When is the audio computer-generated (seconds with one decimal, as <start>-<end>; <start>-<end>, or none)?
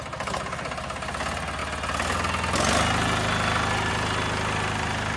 none